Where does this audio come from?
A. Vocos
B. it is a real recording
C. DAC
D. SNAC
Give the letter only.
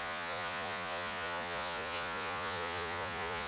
A